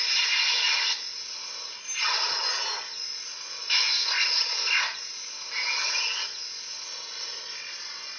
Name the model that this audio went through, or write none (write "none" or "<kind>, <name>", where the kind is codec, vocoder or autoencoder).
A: none